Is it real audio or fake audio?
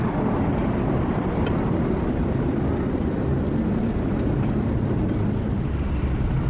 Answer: real